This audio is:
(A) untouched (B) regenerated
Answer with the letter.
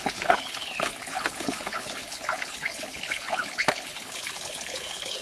B